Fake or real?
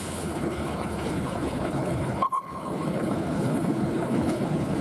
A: fake